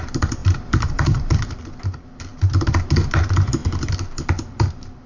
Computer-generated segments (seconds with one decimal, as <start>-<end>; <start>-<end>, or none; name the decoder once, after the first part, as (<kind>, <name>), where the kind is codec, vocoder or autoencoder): 0.4-1.6 (vocoder, BigVGAN v2)